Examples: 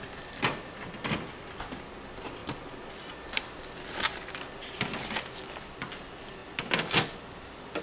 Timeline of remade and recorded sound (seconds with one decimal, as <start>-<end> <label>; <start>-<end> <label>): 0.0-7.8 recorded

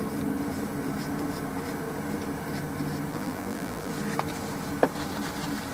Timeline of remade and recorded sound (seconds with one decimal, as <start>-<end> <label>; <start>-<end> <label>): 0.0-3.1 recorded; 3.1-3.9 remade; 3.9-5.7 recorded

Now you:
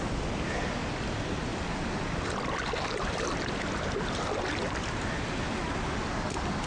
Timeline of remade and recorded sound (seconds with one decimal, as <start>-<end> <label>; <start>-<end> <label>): 0.0-6.7 recorded

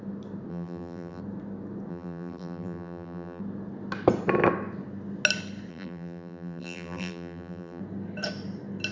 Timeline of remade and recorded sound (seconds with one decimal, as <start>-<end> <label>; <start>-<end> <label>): 0.0-0.5 recorded; 0.5-1.2 remade; 1.2-1.9 recorded; 1.9-3.4 remade; 3.4-5.7 recorded; 5.7-7.8 remade; 7.8-8.9 recorded

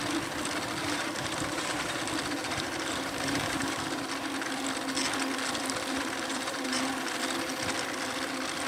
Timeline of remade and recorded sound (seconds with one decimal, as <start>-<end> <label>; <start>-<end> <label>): 0.0-0.8 recorded; 0.8-2.0 remade; 2.0-2.4 recorded; 2.4-4.0 remade; 4.0-6.3 recorded; 6.3-6.9 remade; 6.9-8.7 recorded